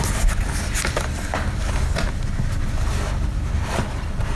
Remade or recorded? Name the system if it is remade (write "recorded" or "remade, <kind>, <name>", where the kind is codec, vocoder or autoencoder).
recorded